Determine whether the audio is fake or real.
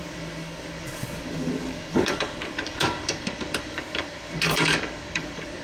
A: fake